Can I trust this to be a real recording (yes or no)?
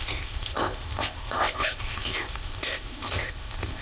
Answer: no